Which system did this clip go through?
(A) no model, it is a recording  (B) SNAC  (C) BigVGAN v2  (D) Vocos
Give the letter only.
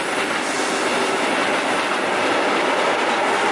A